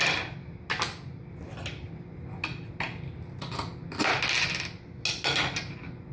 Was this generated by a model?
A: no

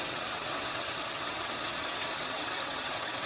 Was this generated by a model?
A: yes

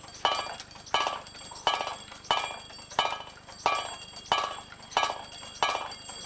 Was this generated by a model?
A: no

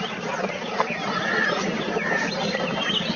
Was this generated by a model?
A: no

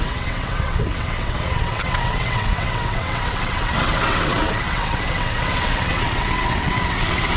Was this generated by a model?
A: yes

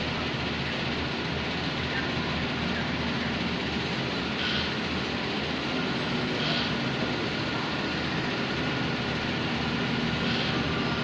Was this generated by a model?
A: no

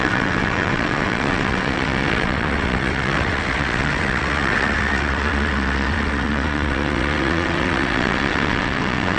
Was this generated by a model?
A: yes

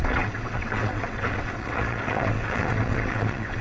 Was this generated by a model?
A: yes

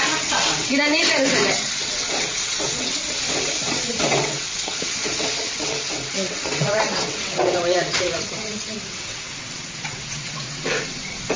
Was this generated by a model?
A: yes